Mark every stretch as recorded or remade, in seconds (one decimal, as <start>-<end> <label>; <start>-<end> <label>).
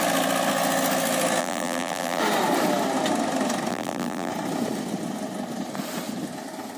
0.0-1.4 recorded; 1.4-2.2 remade; 2.2-3.7 recorded; 3.7-4.3 remade; 4.3-6.8 recorded